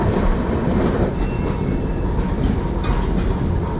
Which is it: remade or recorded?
recorded